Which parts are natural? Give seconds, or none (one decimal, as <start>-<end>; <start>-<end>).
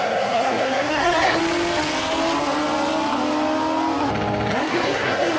1.4-4.6